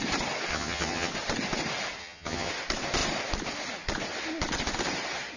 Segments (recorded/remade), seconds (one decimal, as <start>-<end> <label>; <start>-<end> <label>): 0.0-0.5 recorded; 0.5-1.1 remade; 1.1-2.0 recorded; 2.0-2.5 remade; 2.5-5.4 recorded